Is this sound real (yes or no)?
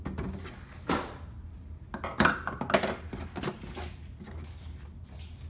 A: yes